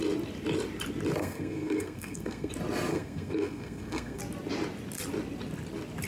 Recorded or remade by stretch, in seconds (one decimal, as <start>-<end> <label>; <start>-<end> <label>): 0.0-1.2 recorded; 1.2-2.5 remade; 2.5-2.9 recorded; 2.9-4.2 remade; 4.2-6.1 recorded